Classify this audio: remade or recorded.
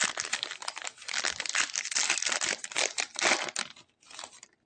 recorded